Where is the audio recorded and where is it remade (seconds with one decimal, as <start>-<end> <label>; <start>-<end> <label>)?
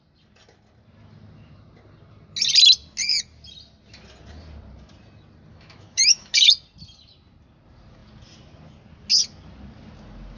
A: 0.0-5.5 recorded; 5.5-6.5 remade; 6.5-10.4 recorded